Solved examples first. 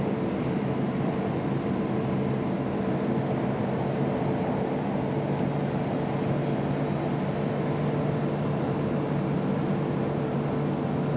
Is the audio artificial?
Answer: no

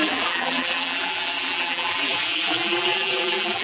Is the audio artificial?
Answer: yes